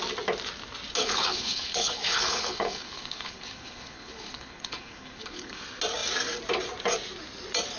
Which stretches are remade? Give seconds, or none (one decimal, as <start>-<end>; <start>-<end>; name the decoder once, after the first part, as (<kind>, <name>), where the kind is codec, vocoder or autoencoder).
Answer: 1.0-5.6 (codec, HILCodec)